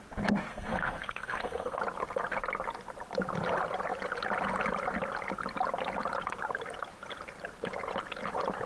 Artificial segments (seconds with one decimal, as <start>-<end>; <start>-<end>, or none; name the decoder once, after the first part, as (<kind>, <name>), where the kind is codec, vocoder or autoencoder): 0.5-1.8 (codec, SNAC)